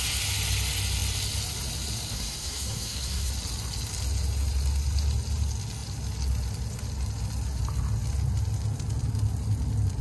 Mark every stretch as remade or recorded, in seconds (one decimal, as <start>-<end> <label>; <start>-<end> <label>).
0.0-2.1 recorded; 2.1-3.3 remade; 3.3-10.0 recorded